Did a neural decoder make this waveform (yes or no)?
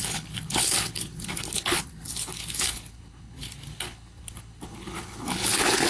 yes